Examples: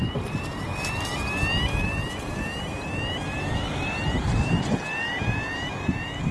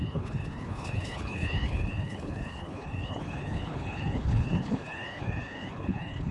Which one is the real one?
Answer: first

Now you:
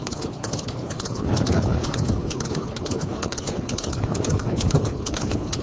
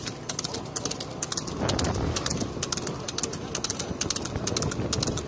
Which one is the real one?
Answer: second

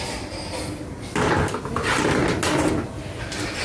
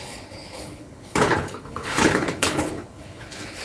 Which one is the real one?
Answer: first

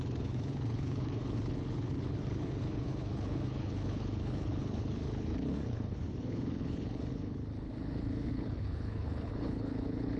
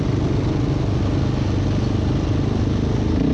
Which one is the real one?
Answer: second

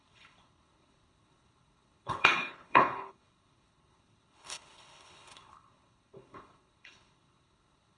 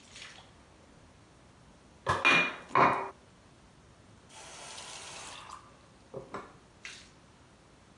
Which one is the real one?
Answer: second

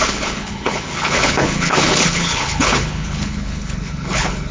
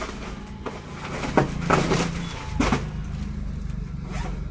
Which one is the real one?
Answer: second